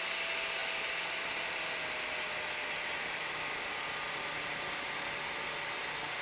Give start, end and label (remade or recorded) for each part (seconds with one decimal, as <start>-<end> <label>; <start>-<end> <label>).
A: 0.0-6.2 recorded

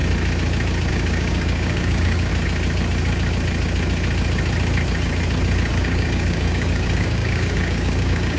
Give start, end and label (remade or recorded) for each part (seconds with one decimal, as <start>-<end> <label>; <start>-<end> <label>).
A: 0.0-0.9 recorded; 0.9-2.3 remade; 2.3-5.7 recorded; 5.7-8.4 remade

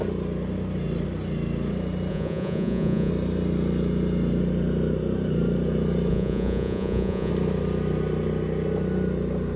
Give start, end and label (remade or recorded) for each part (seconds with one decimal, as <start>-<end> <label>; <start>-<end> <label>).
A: 0.0-2.1 recorded; 2.1-3.1 remade; 3.1-6.1 recorded; 6.1-7.3 remade; 7.3-9.6 recorded

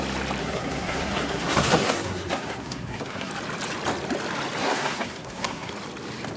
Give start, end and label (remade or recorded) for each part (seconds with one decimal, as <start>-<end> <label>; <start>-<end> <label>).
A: 0.0-0.4 recorded; 0.4-3.3 remade; 3.3-4.6 recorded; 4.6-5.7 remade; 5.7-6.4 recorded

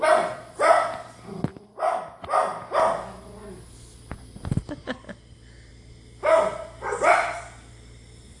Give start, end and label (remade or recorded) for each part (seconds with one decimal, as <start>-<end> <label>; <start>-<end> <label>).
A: 0.0-8.4 recorded

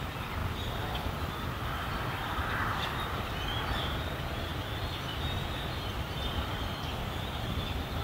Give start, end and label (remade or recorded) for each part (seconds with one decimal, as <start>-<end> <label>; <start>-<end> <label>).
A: 0.0-4.5 remade; 4.5-6.2 recorded; 6.2-8.0 remade

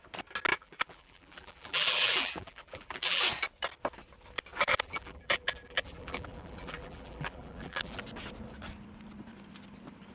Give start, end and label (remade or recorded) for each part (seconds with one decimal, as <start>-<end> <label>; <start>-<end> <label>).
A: 0.0-0.5 recorded; 0.5-3.2 remade; 3.2-4.5 recorded; 4.5-8.0 remade; 8.0-10.1 recorded